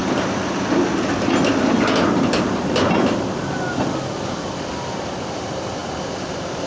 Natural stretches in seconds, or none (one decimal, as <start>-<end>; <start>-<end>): 0.0-3.8